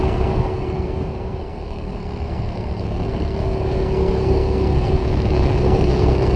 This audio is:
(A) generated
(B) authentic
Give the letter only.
A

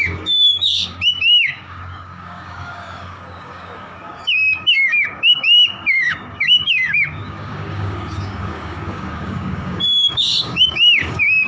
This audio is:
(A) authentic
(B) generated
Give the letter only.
B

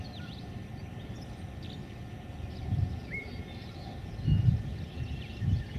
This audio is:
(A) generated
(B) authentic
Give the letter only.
B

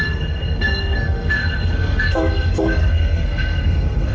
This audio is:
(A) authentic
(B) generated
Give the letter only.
B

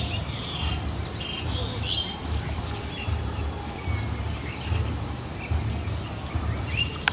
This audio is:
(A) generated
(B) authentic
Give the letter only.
B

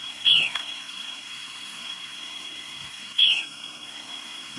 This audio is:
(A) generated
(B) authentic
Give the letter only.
A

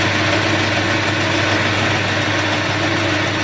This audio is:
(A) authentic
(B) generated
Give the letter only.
A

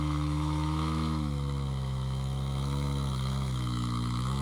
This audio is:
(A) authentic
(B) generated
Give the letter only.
B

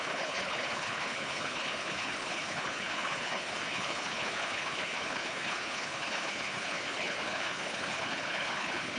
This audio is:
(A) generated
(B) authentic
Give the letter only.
A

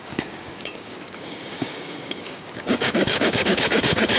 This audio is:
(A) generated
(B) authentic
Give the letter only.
A